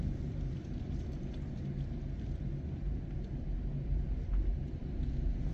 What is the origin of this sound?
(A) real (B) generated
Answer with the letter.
B